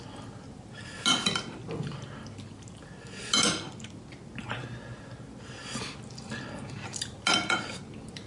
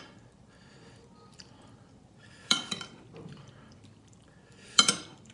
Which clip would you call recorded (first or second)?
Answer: first